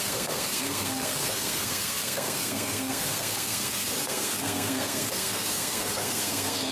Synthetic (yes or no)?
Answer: yes